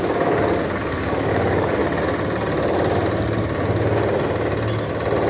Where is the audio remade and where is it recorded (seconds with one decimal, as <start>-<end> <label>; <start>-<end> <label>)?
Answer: 0.0-1.8 remade; 1.8-5.3 recorded